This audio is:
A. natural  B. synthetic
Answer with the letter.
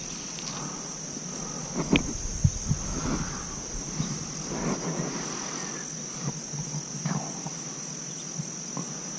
A